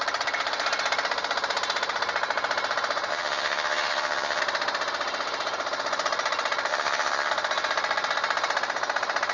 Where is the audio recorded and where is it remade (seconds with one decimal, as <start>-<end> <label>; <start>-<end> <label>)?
0.0-3.1 recorded; 3.1-4.4 remade; 4.4-6.7 recorded; 6.7-7.3 remade; 7.3-9.3 recorded